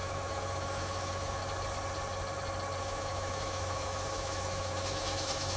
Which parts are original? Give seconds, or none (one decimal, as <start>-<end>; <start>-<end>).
1.4-2.8